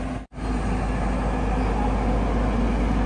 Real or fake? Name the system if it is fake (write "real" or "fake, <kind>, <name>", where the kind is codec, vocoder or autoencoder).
real